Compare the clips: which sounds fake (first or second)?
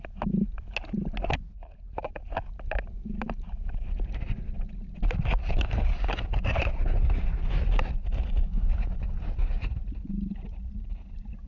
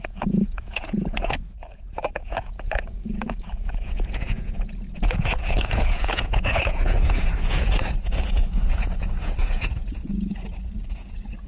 second